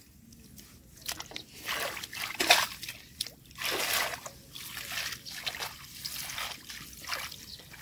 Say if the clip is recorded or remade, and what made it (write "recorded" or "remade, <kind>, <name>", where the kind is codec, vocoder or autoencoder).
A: recorded